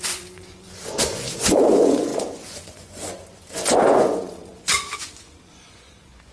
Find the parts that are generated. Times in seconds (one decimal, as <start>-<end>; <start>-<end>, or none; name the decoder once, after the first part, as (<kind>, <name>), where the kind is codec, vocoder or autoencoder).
0.0-6.3 (vocoder, Vocos)

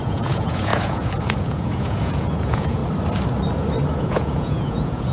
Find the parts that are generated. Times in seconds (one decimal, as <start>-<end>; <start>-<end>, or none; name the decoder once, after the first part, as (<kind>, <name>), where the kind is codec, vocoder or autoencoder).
0.0-2.8 (vocoder, Vocos); 3.9-5.1

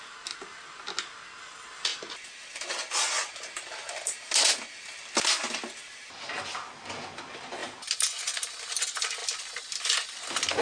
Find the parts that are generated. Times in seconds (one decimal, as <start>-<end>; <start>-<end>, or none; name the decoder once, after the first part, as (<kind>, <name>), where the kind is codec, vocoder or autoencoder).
7.6-8.4 (vocoder, BigVGAN v2)

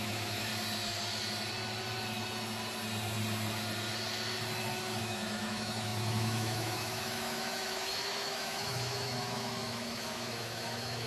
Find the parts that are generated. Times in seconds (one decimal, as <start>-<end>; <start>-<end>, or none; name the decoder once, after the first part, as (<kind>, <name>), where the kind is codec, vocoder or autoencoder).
0.0-0.5 (autoencoder, DAC-VAE); 5.0-11.1

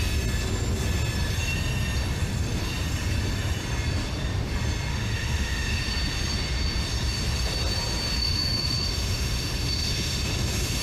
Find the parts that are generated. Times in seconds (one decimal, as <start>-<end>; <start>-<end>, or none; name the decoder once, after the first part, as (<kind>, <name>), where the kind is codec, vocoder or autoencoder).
4.9-5.8 (autoencoder, DAC-VAE); 8.2-10.8

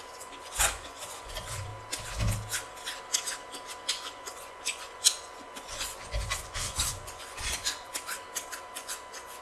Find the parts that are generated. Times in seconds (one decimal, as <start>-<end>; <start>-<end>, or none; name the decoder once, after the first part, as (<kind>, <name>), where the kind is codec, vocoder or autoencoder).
0.0-1.7 (vocoder, Vocos); 3.9-7.9; 8.5-9.4

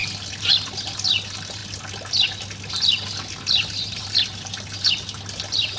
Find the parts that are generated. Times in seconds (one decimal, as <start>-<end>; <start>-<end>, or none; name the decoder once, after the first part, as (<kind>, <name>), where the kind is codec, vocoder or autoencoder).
none

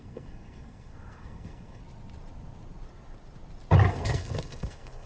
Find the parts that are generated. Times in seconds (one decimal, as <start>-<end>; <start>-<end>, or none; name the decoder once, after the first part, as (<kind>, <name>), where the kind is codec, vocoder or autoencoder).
0.0-1.8 (codec, SNAC); 3.9-5.1